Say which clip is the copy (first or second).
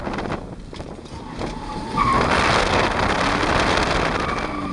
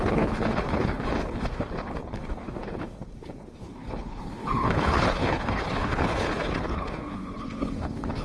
second